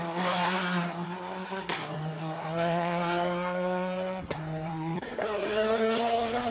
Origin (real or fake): fake